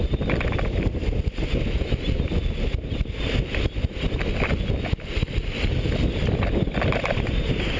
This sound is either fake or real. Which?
real